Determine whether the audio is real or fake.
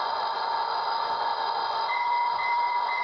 fake